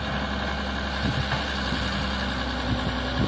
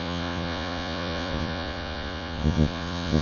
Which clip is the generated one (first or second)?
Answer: second